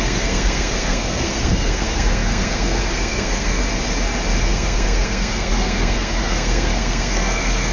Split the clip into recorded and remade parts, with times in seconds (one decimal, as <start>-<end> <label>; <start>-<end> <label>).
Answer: 0.0-3.6 remade; 3.6-4.4 recorded; 4.4-7.7 remade